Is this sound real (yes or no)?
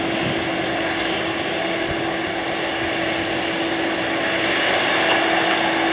yes